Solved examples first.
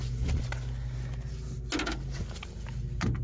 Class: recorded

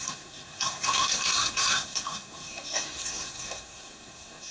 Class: remade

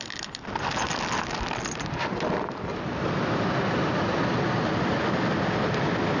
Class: recorded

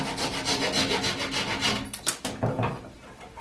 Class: recorded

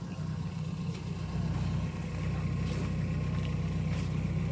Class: recorded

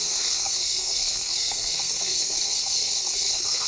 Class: remade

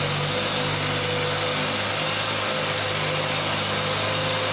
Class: recorded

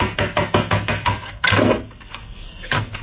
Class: remade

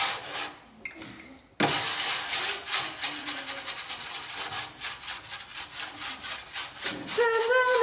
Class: recorded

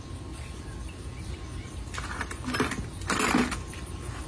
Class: recorded